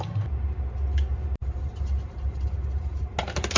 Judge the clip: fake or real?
real